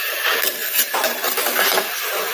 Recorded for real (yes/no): no